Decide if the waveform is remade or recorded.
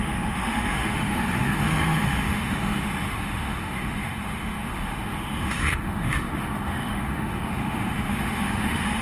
remade